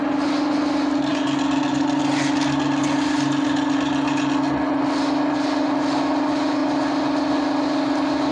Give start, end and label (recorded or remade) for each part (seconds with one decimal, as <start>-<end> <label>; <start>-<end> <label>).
0.0-8.3 recorded